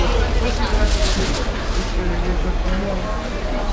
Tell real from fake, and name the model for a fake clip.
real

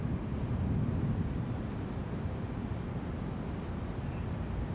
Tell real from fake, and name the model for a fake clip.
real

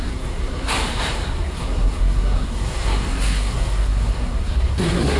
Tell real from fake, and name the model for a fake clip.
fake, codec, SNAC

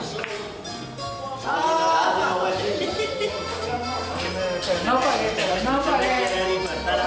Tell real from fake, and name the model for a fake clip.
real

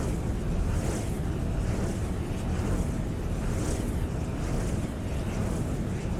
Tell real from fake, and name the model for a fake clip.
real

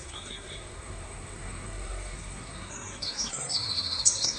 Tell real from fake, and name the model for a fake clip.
fake, codec, SNAC